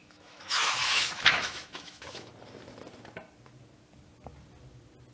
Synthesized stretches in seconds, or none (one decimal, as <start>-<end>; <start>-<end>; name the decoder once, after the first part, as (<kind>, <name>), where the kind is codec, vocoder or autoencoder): 0.0-2.3 (autoencoder, DAC-VAE)